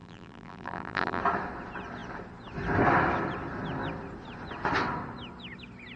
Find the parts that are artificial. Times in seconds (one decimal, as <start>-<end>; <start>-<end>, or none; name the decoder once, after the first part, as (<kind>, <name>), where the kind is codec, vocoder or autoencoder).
0.0-1.2 (vocoder, BigVGAN v2)